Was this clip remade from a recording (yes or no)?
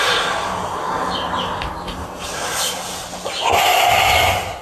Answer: no